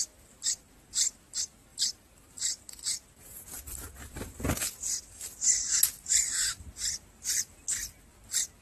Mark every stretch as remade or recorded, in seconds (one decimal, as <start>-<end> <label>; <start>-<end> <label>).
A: 0.0-1.7 recorded; 1.7-2.3 remade; 2.3-8.6 recorded